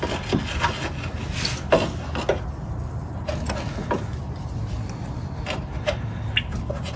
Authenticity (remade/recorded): recorded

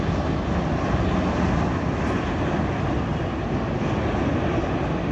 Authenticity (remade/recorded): recorded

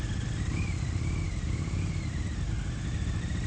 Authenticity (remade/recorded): recorded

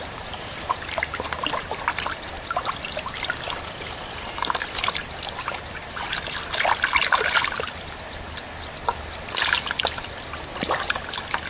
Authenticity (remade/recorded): recorded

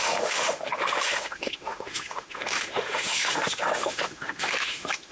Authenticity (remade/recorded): remade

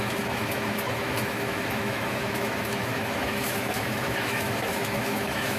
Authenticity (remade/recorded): remade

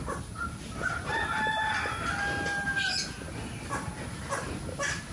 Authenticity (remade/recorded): recorded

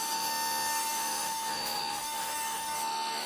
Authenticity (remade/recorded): remade